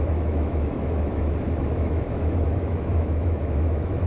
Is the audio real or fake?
fake